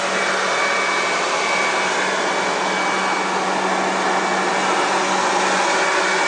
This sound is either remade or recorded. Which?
recorded